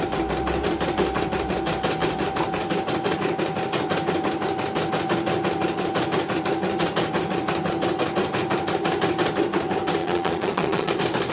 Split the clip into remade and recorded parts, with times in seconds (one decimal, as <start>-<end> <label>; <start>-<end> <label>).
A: 0.0-10.0 recorded; 10.0-10.9 remade; 10.9-11.3 recorded